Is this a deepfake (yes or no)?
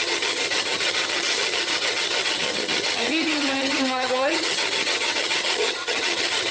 yes